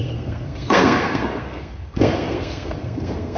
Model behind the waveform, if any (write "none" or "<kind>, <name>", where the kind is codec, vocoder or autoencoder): codec, SNAC